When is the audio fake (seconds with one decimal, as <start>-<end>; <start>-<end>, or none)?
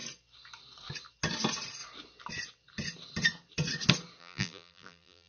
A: 4.2-5.3